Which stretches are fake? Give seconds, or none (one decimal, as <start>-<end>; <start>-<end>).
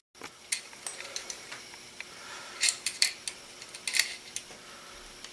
0.9-3.1